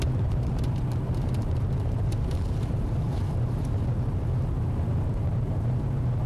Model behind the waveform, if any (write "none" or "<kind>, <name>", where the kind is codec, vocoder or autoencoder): vocoder, BigVGAN v2